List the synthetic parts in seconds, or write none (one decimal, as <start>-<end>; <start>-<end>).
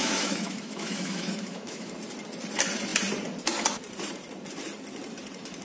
0.0-1.9